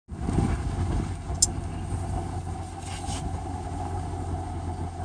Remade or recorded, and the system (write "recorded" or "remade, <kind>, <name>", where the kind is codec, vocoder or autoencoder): recorded